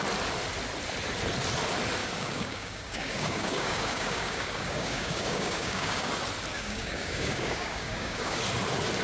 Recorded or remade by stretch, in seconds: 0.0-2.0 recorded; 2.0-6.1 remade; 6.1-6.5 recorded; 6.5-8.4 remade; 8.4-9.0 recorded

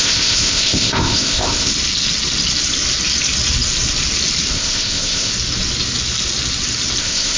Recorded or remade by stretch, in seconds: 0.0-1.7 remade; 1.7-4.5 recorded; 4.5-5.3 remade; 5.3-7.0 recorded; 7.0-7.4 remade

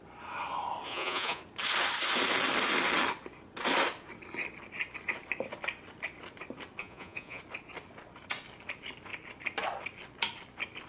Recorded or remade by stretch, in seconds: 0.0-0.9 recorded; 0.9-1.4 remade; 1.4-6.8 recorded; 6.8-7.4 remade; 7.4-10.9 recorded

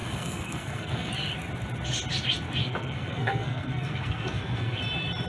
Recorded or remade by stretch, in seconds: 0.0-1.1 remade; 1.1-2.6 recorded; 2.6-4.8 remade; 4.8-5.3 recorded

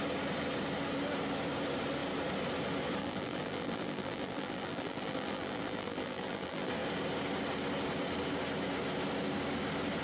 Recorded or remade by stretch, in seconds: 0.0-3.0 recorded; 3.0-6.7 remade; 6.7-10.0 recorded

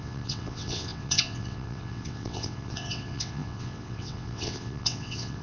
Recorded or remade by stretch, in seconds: 0.0-5.4 remade

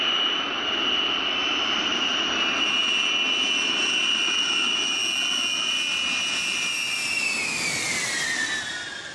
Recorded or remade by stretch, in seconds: 0.0-5.0 remade; 5.0-6.2 recorded; 6.2-9.1 remade